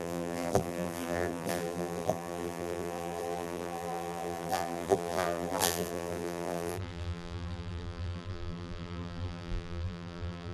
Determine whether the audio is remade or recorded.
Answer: remade